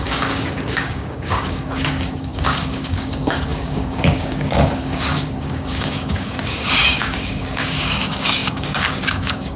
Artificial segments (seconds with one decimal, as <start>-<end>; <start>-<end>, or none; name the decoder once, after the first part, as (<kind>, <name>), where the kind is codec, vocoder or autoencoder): 0.0-9.6 (codec, DAC)

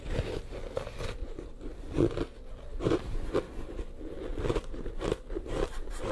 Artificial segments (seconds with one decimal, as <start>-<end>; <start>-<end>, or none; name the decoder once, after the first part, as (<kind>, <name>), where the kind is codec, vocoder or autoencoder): 1.2-1.8 (vocoder, BigVGAN v2); 2.7-3.3; 4.3-6.1

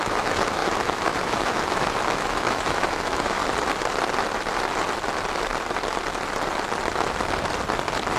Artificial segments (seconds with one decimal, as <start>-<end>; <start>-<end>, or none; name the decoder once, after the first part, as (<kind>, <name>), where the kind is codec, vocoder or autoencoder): 0.0-3.4 (autoencoder, DAC-VAE)

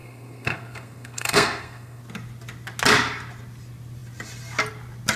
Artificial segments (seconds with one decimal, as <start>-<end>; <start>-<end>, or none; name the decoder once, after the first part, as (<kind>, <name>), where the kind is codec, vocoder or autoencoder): 0.0-2.0 (codec, SNAC)

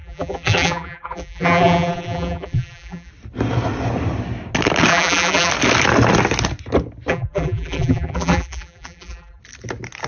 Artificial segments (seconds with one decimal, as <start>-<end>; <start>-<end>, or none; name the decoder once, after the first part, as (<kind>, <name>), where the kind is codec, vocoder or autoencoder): 0.0-3.1 (vocoder, BigVGAN v2); 4.9-5.5; 7.1-9.4